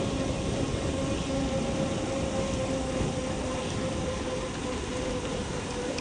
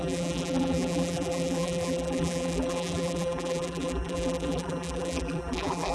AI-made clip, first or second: second